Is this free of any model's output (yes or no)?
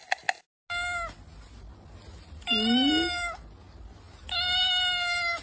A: yes